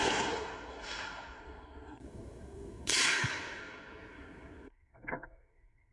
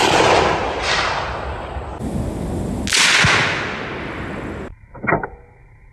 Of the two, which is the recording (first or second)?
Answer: second